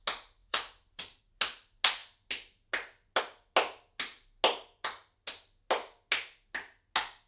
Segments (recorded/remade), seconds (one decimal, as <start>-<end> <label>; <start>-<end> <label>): 0.0-0.4 recorded; 0.4-1.2 remade; 1.2-7.3 recorded